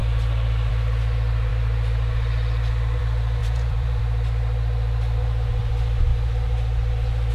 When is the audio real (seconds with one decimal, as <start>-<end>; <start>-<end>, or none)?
0.0-3.4; 4.0-7.3